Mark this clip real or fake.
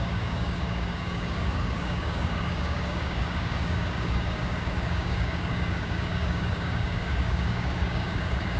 fake